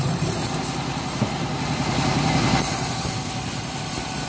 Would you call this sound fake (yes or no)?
yes